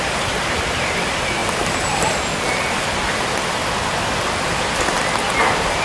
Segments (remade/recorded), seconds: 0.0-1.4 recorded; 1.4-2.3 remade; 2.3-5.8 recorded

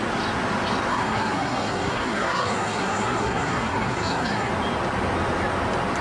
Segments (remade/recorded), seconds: 0.0-0.9 recorded; 0.9-4.5 remade; 4.5-6.0 recorded

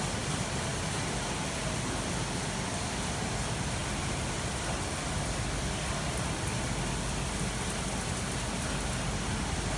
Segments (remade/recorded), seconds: 0.0-9.8 recorded

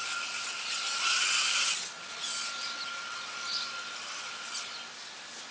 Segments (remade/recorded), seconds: 0.0-5.5 recorded

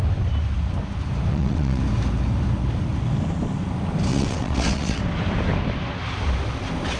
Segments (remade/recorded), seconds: 0.0-1.3 recorded; 1.3-1.8 remade; 1.8-4.1 recorded; 4.1-5.0 remade; 5.0-7.0 recorded

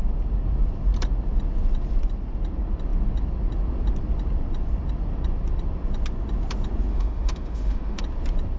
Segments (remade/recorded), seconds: 0.0-6.9 recorded; 6.9-8.0 remade; 8.0-8.6 recorded

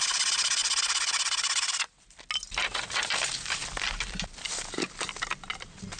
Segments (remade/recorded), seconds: 0.0-6.0 recorded

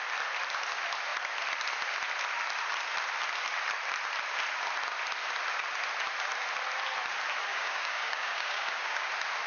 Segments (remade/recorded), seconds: 0.0-7.5 recorded; 7.5-9.1 remade; 9.1-9.5 recorded